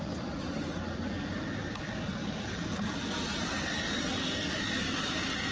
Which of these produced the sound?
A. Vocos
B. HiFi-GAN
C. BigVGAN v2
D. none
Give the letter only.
C